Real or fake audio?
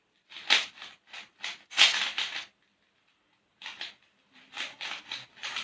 real